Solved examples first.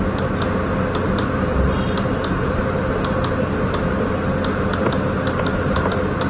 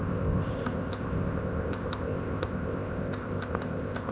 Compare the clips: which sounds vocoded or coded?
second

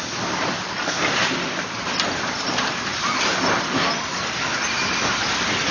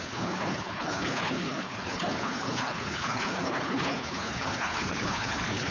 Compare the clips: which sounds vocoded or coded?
second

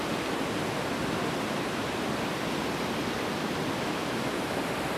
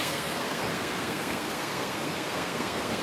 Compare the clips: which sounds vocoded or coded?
second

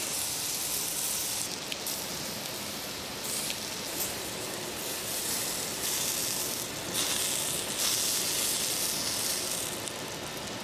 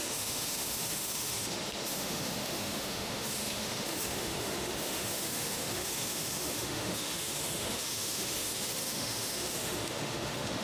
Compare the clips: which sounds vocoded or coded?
second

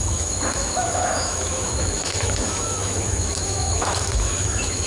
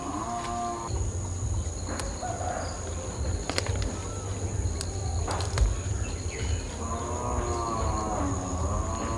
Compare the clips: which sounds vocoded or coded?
first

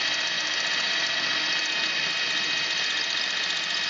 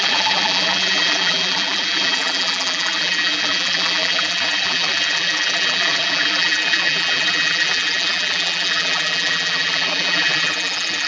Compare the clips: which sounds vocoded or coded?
second